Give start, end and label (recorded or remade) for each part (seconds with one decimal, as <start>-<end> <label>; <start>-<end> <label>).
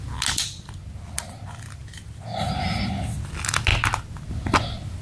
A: 0.0-5.0 recorded